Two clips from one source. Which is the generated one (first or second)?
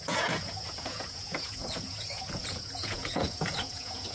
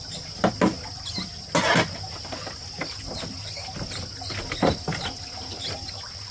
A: first